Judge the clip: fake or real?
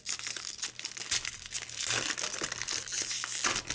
real